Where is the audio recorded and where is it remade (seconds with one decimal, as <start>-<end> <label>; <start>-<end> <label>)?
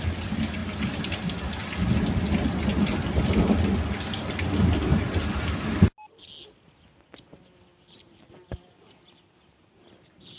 0.0-10.4 recorded